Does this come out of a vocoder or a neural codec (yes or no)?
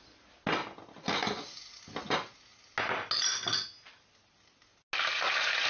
no